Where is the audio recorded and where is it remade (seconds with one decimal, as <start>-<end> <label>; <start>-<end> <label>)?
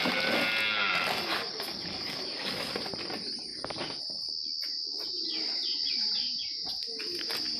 0.0-1.3 recorded; 1.3-2.7 remade; 2.7-7.6 recorded